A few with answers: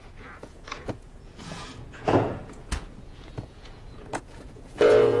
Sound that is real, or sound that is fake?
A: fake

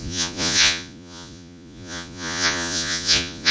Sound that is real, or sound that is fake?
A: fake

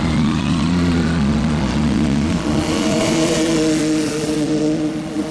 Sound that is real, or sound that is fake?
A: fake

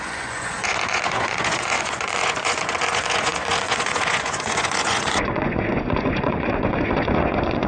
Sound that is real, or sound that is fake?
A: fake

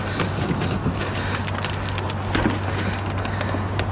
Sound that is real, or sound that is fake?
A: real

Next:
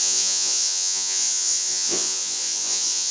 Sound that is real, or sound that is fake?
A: fake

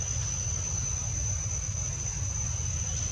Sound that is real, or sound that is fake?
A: real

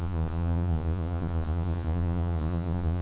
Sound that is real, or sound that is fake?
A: fake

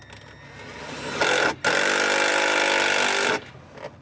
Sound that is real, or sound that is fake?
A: real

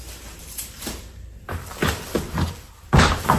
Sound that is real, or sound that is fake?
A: real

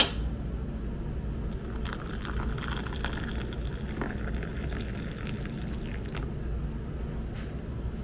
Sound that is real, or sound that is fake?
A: real